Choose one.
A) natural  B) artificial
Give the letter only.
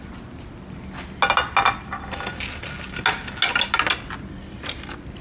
A